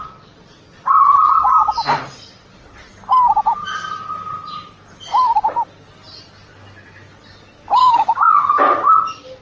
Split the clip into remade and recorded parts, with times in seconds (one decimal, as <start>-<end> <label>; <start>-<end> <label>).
0.0-7.8 recorded; 7.8-8.5 remade; 8.5-9.4 recorded